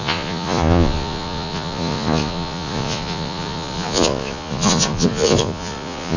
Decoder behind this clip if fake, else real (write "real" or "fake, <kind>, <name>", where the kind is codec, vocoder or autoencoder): fake, vocoder, Vocos